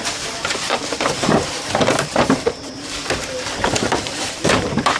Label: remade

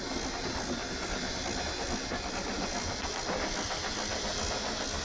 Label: recorded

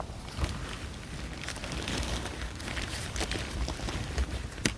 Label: recorded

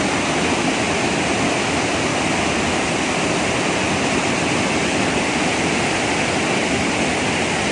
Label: recorded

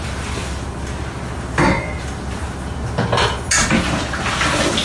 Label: recorded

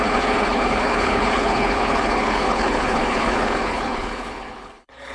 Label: remade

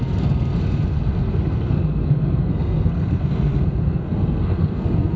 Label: remade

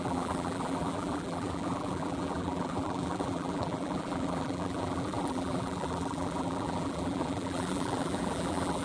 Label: remade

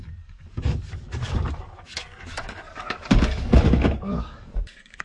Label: remade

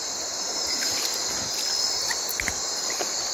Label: recorded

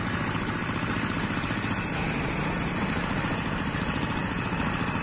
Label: recorded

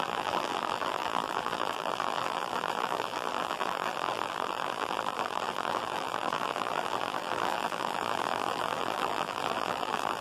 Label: remade